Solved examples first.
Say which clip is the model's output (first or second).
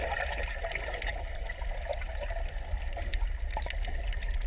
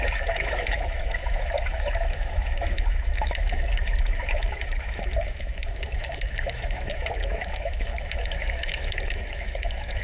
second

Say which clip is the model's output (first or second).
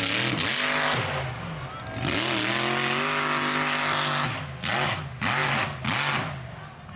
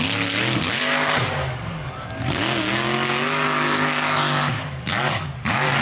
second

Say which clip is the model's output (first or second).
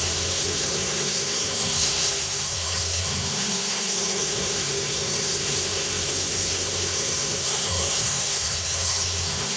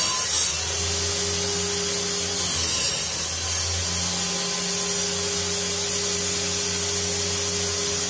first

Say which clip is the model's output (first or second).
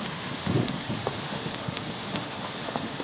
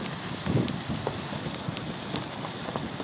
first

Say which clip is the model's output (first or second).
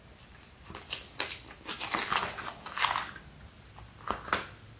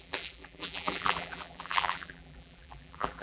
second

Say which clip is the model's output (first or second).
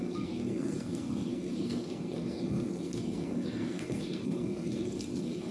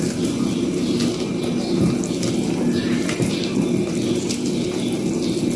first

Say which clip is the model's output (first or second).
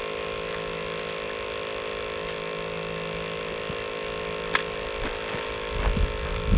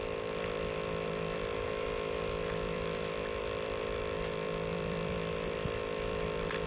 second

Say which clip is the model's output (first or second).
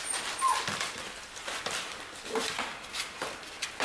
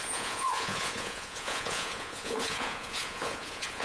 second